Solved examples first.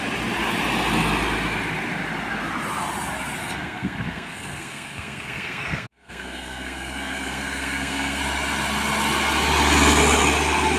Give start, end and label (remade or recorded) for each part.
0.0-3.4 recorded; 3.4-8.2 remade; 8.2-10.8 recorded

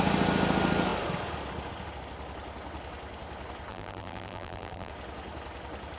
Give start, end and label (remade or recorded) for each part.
0.0-3.7 recorded; 3.7-4.9 remade; 4.9-6.0 recorded

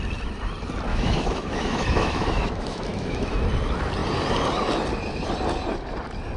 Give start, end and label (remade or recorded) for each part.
0.0-0.9 recorded; 0.9-3.4 remade; 3.4-6.4 recorded

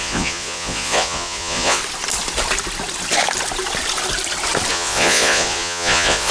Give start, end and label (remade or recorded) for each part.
0.0-1.8 remade; 1.8-4.7 recorded; 4.7-6.3 remade

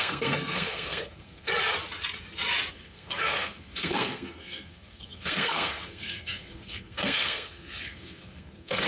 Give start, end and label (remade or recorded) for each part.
0.0-1.5 remade; 1.5-2.7 recorded; 2.7-8.9 remade

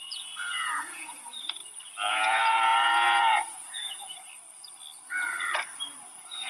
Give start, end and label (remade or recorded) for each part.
0.0-1.6 remade; 1.6-2.1 recorded; 2.1-4.3 remade; 4.3-6.1 recorded; 6.1-6.5 remade

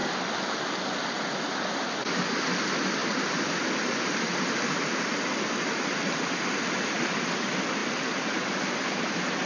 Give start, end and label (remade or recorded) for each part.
0.0-3.0 recorded; 3.0-3.9 remade; 3.9-4.3 recorded; 4.3-7.1 remade; 7.1-9.5 recorded

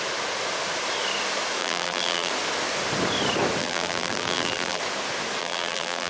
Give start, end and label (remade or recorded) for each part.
0.0-1.6 recorded; 1.6-2.3 remade; 2.3-3.6 recorded; 3.6-4.8 remade; 4.8-5.4 recorded; 5.4-6.1 remade